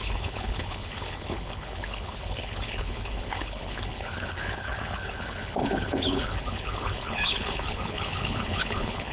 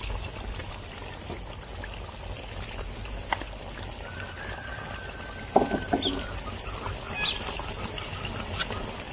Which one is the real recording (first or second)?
second